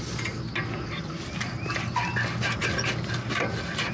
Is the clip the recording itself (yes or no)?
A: yes